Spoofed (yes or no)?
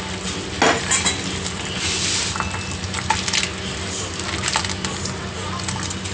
no